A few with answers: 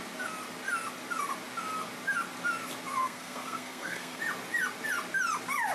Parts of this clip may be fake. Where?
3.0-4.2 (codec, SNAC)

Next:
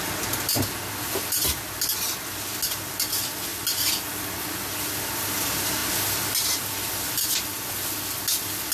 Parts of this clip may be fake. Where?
none

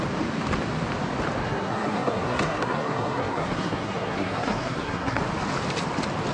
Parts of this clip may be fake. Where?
1.4-5.2 (codec, SNAC)

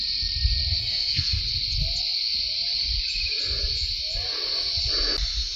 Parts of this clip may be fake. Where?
0.8-1.4 (codec, SNAC)